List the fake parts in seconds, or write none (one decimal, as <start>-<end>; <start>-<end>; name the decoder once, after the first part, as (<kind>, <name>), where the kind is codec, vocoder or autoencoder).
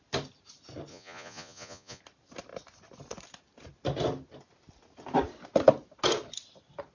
0.9-2.0 (vocoder, Vocos)